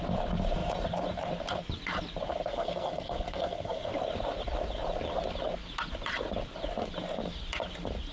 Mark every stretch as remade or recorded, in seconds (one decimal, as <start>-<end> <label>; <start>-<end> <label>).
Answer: 0.0-2.5 recorded; 2.5-3.9 remade; 3.9-8.1 recorded